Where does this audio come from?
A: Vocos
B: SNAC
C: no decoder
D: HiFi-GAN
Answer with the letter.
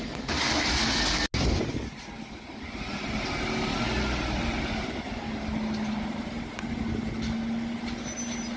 C